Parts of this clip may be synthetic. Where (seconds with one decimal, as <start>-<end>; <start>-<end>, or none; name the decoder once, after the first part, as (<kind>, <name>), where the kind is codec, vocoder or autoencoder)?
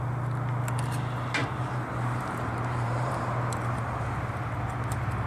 1.4-3.1 (vocoder, BigVGAN v2)